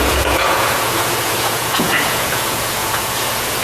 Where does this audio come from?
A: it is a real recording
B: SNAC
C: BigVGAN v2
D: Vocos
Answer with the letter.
D